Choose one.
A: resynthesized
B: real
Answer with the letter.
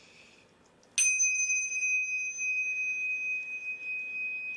B